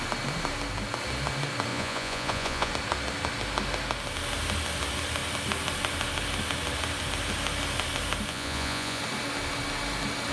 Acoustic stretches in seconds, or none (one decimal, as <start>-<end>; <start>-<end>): 0.0-1.7; 2.7-8.3; 9.0-10.3